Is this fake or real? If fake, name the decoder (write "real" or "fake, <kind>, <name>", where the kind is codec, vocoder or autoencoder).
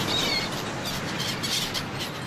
real